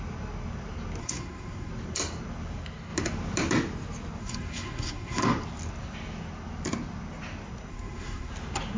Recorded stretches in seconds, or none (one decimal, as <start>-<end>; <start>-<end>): 0.0-1.0; 1.7-4.2; 5.2-7.7; 8.3-8.8